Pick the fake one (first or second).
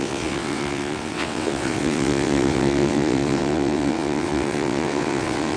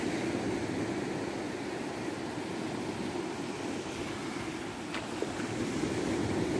first